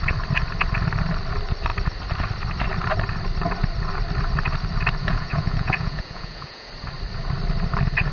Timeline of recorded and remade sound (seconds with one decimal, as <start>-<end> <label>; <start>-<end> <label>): 0.0-5.0 recorded; 5.0-6.7 remade; 6.7-8.1 recorded